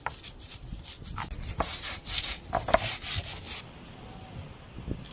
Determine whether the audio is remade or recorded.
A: recorded